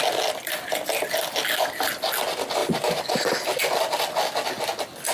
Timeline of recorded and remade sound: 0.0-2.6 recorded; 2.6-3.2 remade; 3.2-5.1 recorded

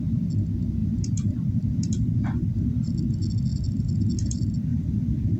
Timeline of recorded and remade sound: 0.0-0.8 recorded; 0.8-2.9 remade; 2.9-3.5 recorded; 3.5-4.0 remade; 4.0-4.7 recorded; 4.7-5.4 remade

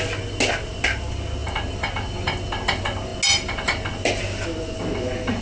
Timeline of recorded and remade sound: 0.0-5.4 recorded

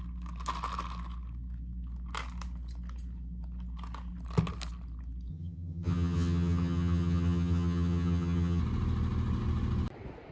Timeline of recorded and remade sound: 0.0-5.3 recorded; 5.3-8.6 remade; 8.6-10.3 recorded

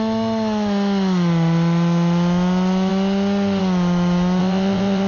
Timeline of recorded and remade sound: 0.0-4.4 recorded; 4.4-5.1 remade

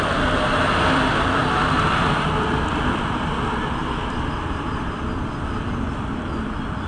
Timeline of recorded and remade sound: 0.0-1.4 remade; 1.4-2.0 recorded; 2.0-6.9 remade